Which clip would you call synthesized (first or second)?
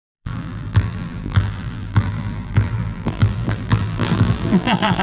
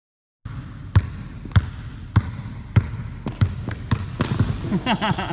first